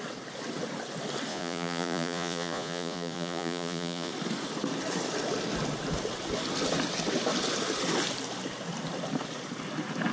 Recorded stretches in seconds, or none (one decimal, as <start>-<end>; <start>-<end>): 0.0-1.3; 4.1-10.1